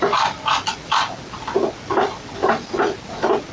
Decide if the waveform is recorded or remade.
recorded